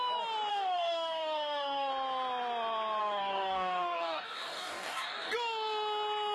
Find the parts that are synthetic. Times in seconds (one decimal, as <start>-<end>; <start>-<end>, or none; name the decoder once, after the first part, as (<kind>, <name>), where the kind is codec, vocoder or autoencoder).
0.5-1.9 (codec, DAC); 3.0-5.3

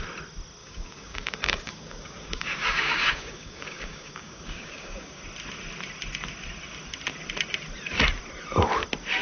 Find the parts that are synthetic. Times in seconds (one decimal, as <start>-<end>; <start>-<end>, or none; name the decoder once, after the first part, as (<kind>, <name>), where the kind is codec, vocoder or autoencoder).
0.6-5.2 (codec, DAC)